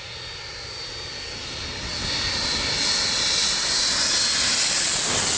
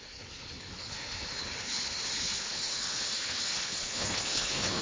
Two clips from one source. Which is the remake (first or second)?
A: second